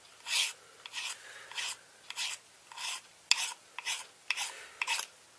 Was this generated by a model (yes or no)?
no